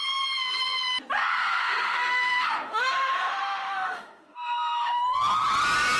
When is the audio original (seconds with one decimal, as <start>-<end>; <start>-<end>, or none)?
0.0-1.4; 5.0-6.0